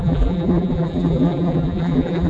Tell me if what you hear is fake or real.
fake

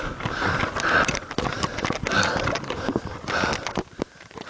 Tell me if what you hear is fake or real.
real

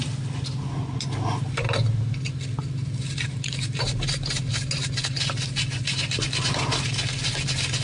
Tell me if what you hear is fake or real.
real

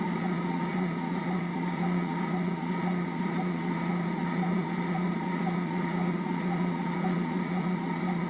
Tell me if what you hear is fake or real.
fake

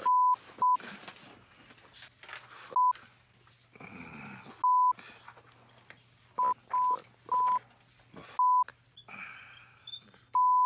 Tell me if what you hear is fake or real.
real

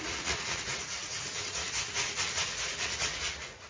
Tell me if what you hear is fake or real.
fake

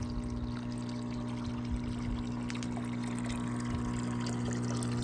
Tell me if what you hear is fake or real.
real